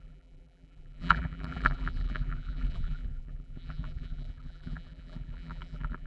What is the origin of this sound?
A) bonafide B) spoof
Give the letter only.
B